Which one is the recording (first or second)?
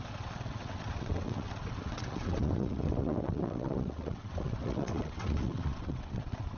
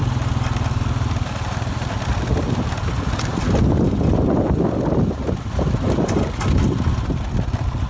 second